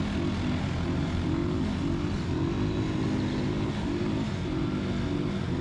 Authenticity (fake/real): real